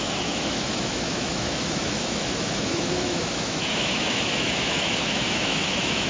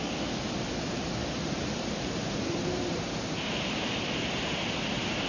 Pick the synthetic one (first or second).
first